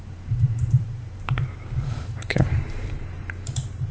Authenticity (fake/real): fake